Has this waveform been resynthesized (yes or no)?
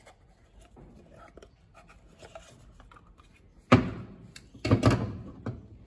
no